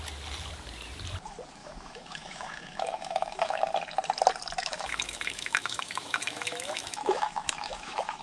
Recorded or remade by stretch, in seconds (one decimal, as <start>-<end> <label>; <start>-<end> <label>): 0.0-1.6 recorded; 1.6-3.6 remade; 3.6-4.6 recorded; 4.6-8.2 remade